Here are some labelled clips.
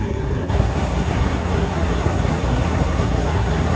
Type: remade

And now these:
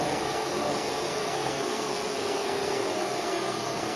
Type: remade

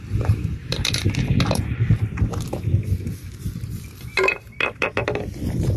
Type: recorded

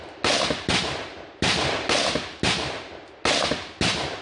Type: recorded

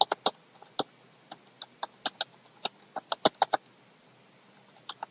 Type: recorded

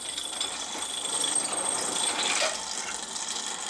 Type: recorded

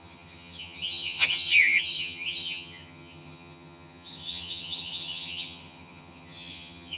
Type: remade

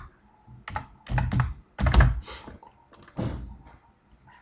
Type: recorded